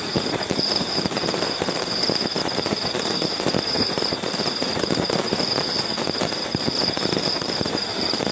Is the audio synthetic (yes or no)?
yes